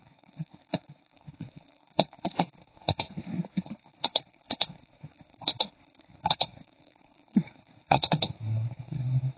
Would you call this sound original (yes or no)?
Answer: no